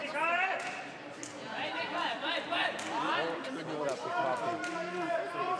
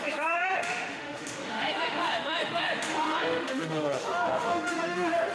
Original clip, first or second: first